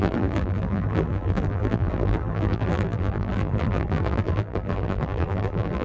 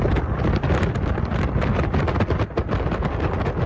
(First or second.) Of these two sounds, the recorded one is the second